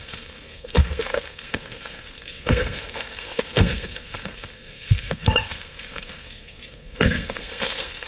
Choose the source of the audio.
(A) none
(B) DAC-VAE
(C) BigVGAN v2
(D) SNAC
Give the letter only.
D